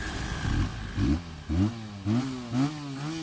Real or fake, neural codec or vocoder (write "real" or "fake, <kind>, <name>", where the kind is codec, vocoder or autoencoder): real